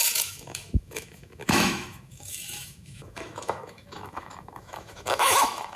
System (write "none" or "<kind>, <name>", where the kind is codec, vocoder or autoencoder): autoencoder, DAC-VAE